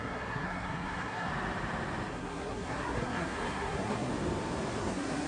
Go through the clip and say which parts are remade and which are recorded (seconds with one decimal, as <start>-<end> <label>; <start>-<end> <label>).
0.0-1.3 remade; 1.3-2.1 recorded; 2.1-4.1 remade; 4.1-4.8 recorded; 4.8-5.3 remade